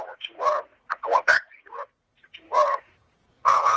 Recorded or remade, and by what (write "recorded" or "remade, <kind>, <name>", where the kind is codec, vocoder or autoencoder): remade, vocoder, Vocos